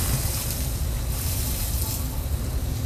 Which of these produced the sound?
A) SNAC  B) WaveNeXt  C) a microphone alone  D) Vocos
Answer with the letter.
C